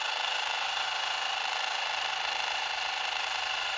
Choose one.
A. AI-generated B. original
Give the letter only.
A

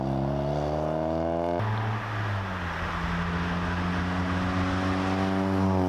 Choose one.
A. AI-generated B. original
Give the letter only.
B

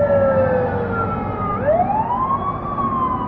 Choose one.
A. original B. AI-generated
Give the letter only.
A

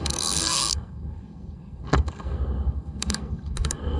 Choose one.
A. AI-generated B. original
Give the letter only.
A